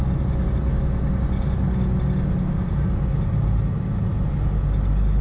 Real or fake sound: real